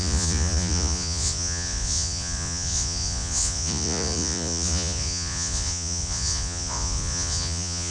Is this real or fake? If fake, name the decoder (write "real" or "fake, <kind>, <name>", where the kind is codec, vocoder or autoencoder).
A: fake, vocoder, Vocos